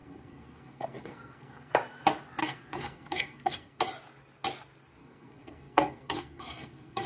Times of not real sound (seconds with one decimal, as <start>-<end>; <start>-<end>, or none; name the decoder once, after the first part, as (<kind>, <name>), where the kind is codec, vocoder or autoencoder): 0.0-1.7 (codec, SNAC); 2.4-3.8; 5.0-7.1